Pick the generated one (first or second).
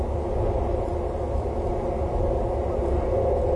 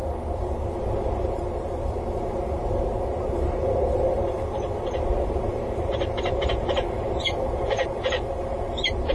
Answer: second